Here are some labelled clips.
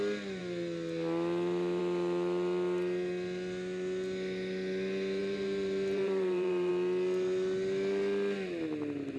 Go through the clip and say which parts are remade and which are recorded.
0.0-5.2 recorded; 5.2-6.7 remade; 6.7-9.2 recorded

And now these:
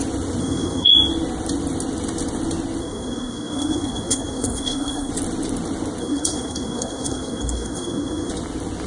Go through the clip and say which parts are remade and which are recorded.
0.0-0.4 recorded; 0.4-0.9 remade; 0.9-2.8 recorded; 2.8-5.1 remade; 5.1-6.0 recorded; 6.0-8.3 remade; 8.3-8.9 recorded

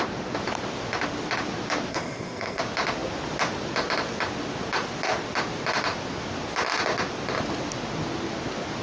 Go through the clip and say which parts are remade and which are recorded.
0.0-1.9 recorded; 1.9-2.6 remade; 2.6-8.8 recorded